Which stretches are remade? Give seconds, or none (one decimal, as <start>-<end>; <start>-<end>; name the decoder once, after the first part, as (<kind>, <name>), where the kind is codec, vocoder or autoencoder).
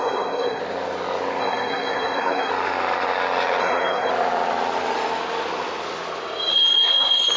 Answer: 0.0-0.6 (codec, SNAC); 1.4-2.5; 3.6-4.1; 6.5-7.4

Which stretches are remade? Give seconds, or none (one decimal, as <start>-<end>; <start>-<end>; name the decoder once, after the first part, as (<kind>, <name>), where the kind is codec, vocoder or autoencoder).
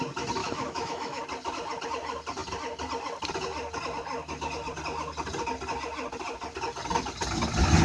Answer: 0.4-1.2 (autoencoder, DAC-VAE)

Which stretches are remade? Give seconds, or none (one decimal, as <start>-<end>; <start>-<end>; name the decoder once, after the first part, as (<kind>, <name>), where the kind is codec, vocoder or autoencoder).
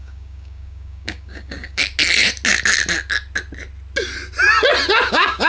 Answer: 0.0-1.8 (codec, DAC); 5.1-5.5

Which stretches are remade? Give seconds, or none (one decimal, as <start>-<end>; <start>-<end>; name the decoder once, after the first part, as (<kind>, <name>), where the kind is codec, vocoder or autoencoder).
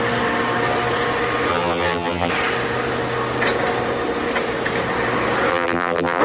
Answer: 1.5-2.3 (vocoder, BigVGAN v2); 5.5-6.2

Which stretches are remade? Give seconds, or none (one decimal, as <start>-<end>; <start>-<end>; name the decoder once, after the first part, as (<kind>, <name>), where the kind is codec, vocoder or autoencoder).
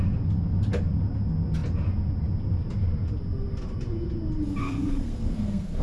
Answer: 4.6-5.8 (codec, SNAC)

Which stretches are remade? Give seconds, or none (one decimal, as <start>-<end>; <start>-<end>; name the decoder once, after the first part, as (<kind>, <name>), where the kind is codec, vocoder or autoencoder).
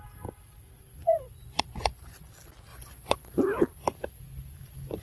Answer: 1.0-2.3 (vocoder, Vocos); 2.7-3.4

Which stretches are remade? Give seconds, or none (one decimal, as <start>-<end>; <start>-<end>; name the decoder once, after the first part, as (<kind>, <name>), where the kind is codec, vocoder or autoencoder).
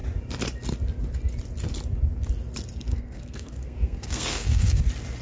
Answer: 2.9-4.8 (codec, SNAC)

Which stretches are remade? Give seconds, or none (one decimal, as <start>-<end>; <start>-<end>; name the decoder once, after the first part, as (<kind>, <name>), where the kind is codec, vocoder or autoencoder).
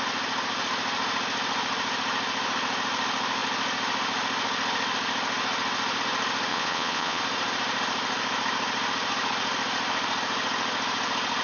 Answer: 6.5-7.2 (vocoder, Vocos)